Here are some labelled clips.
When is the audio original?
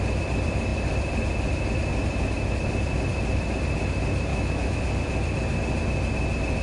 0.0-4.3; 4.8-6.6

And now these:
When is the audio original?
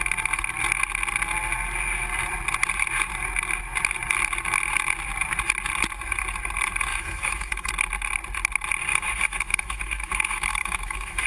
0.0-6.9; 7.7-8.9